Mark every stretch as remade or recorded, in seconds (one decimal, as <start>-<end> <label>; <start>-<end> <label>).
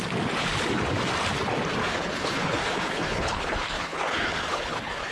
0.0-1.8 recorded; 1.8-5.1 remade